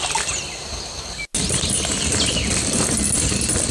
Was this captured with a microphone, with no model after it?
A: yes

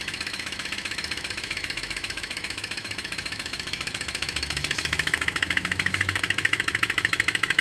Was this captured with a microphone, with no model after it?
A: no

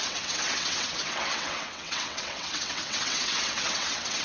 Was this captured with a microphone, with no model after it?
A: no